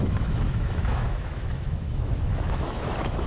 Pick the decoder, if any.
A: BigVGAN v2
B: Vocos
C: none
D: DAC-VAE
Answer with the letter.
D